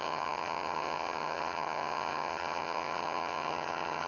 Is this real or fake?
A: fake